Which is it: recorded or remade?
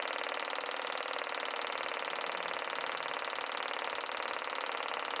recorded